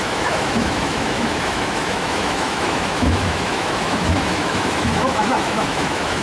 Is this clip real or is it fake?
fake